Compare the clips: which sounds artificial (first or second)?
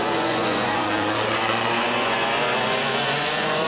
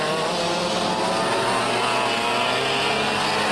first